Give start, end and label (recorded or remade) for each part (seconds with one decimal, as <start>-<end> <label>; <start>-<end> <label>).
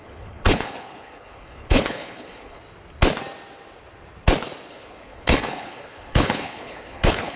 0.0-2.6 remade; 2.6-4.7 recorded; 4.7-7.4 remade